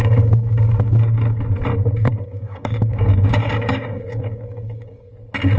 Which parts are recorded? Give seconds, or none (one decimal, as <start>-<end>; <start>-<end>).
1.4-2.1; 5.1-5.6